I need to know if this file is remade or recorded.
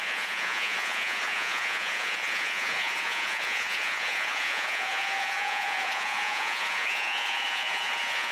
remade